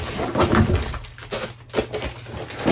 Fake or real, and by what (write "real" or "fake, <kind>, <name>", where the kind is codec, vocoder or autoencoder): real